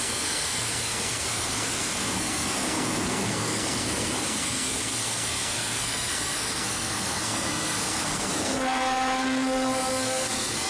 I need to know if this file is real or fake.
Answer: fake